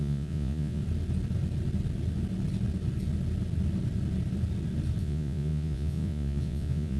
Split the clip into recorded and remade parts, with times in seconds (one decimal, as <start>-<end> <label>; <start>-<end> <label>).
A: 0.0-0.8 remade; 0.8-5.0 recorded; 5.0-7.0 remade